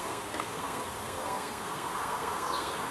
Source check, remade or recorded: remade